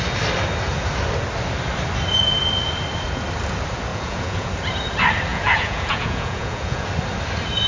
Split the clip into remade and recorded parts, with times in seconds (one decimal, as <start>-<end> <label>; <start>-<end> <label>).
0.0-3.9 recorded; 3.9-4.5 remade; 4.5-5.3 recorded; 5.3-6.9 remade; 6.9-7.7 recorded